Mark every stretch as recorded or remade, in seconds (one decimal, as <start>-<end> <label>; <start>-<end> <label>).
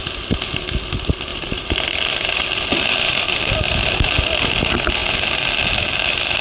0.0-1.3 recorded; 1.3-1.9 remade; 1.9-6.4 recorded